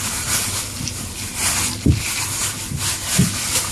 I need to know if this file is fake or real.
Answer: real